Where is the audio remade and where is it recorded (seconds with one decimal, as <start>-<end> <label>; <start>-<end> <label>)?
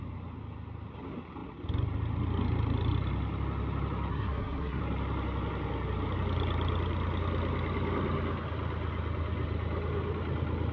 0.0-4.1 recorded; 4.1-4.8 remade; 4.8-10.7 recorded